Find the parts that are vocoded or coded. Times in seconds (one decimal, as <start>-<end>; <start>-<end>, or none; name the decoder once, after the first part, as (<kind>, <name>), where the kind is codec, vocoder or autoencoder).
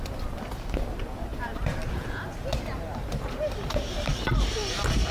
none